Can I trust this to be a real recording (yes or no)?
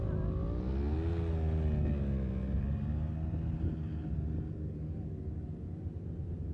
yes